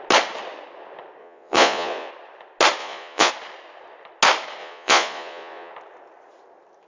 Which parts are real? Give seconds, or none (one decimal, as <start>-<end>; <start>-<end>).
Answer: 0.0-1.2; 2.1-2.8; 3.3-4.6; 5.7-6.9